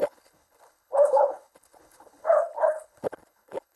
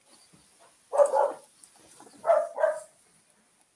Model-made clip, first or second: first